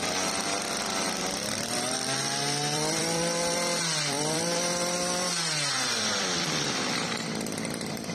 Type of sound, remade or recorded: remade